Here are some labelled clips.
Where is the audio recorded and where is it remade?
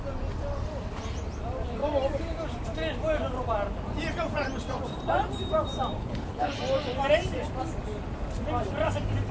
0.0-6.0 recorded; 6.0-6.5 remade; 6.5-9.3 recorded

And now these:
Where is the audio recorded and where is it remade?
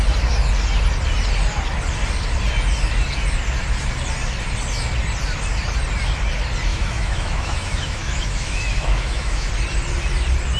0.0-6.7 recorded; 6.7-9.5 remade; 9.5-10.6 recorded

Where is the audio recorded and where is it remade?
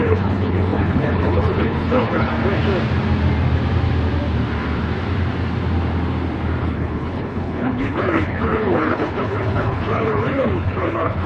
0.0-2.3 remade; 2.3-6.6 recorded; 6.6-11.3 remade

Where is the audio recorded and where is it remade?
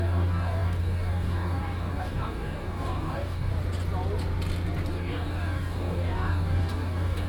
0.0-3.5 remade; 3.5-4.9 recorded; 4.9-7.3 remade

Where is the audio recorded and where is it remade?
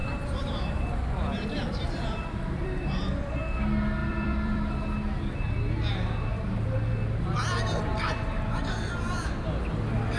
0.0-3.0 remade; 3.0-4.0 recorded; 4.0-4.7 remade; 4.7-6.3 recorded; 6.3-6.9 remade; 6.9-10.2 recorded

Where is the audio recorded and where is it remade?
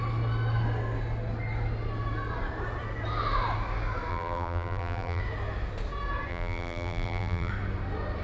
0.0-4.1 recorded; 4.1-5.2 remade; 5.2-6.3 recorded; 6.3-7.5 remade; 7.5-8.2 recorded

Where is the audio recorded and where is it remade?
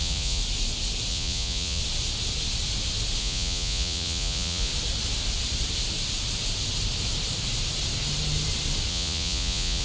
0.0-0.4 remade; 0.4-1.1 recorded; 1.1-1.8 remade; 1.8-3.2 recorded; 3.2-4.7 remade; 4.7-8.9 recorded; 8.9-9.8 remade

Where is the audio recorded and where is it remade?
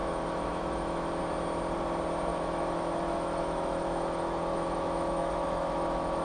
0.0-1.2 remade; 1.2-2.3 recorded; 2.3-6.2 remade